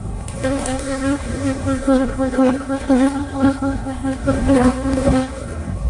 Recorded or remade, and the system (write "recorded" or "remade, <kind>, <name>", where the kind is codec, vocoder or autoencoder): remade, codec, SNAC